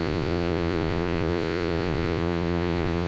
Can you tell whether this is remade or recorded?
remade